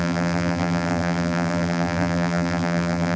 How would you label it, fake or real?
fake